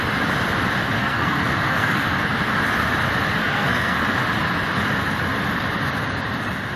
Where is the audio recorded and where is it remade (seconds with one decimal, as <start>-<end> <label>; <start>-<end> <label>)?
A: 0.0-1.0 recorded; 1.0-2.3 remade; 2.3-3.4 recorded; 3.4-4.0 remade; 4.0-6.8 recorded